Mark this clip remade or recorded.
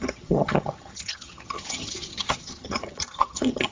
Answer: remade